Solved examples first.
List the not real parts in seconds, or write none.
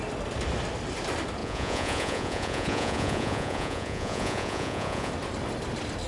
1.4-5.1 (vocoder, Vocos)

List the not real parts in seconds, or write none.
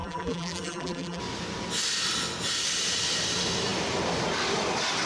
0.0-1.2 (vocoder, BigVGAN v2)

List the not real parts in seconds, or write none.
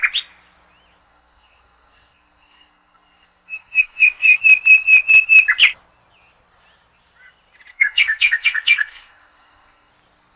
1.0-4.4 (codec, SNAC); 7.7-9.9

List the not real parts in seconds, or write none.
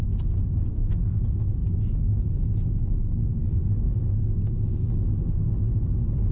0.7-1.2 (codec, SNAC)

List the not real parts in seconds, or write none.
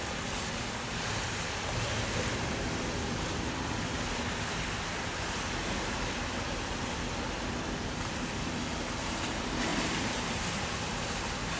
9.7-10.5 (vocoder, BigVGAN v2)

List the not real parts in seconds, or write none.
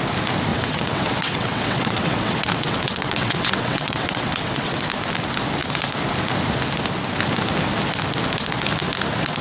0.5-4.8 (vocoder, WaveNeXt)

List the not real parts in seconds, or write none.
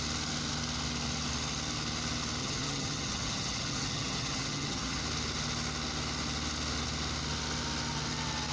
2.4-5.0 (vocoder, HiFi-GAN)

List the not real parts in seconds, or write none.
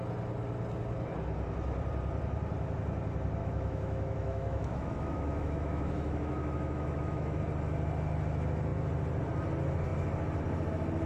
3.4-7.4 (autoencoder, DAC-VAE)